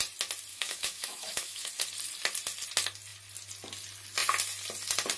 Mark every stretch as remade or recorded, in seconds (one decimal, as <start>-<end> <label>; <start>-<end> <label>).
0.0-0.5 recorded; 0.5-1.7 remade; 1.7-5.2 recorded